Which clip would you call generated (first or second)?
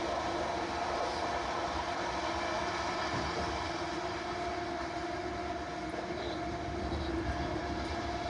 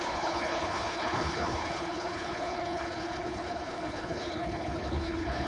second